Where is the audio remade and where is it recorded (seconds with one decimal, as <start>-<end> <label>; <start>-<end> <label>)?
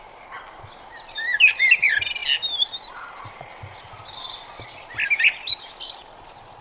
0.0-6.6 recorded